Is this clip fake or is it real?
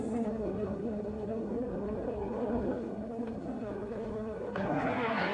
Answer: fake